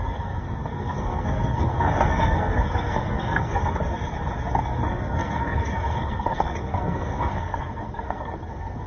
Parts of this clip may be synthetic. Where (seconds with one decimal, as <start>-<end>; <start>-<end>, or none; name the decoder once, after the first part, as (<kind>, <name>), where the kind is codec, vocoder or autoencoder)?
0.0-3.6 (codec, SNAC); 4.6-8.9